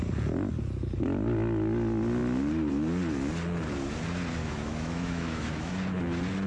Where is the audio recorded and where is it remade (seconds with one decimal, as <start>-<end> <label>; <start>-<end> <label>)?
0.0-4.4 recorded; 4.4-5.7 remade; 5.7-6.5 recorded